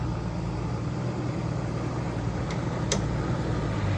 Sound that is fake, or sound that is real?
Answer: real